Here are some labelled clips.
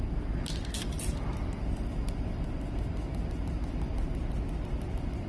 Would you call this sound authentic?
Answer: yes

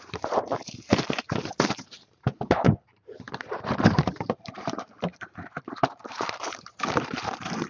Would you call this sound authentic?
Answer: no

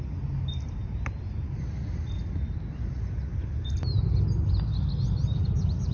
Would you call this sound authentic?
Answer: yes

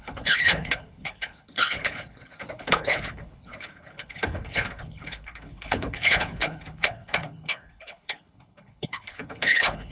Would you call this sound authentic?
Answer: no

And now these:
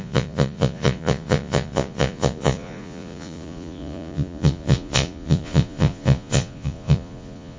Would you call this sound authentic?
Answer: no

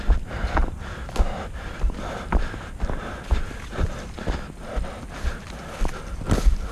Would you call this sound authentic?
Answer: yes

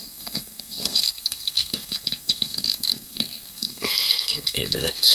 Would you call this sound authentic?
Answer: no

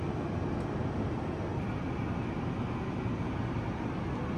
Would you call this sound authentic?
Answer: yes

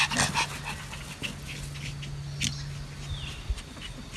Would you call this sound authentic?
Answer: yes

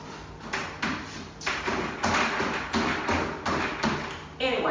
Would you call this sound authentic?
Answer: yes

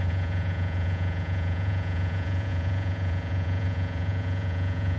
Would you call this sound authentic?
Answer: no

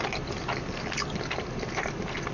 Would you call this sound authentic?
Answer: yes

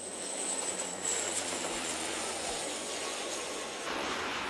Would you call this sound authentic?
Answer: no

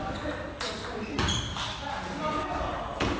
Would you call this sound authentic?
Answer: yes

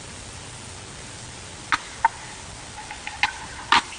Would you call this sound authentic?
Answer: yes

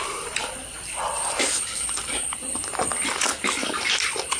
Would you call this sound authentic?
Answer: no